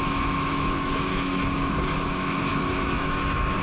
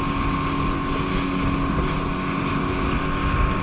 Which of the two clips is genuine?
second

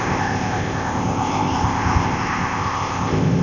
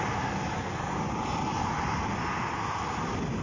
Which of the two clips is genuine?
second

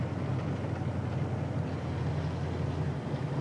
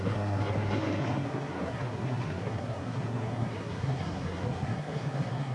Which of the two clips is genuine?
first